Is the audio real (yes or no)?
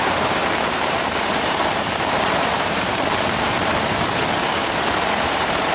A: no